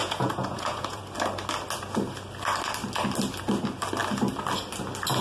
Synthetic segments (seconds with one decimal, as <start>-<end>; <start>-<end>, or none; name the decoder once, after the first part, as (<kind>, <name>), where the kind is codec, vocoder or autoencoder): 0.0-1.0 (vocoder, Vocos)